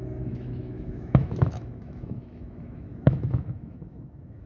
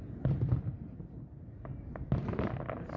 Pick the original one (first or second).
second